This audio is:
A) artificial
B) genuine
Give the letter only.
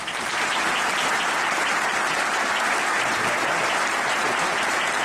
B